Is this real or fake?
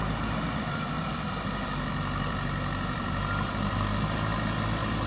fake